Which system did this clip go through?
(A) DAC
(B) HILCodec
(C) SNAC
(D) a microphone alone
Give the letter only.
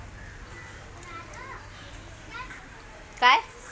D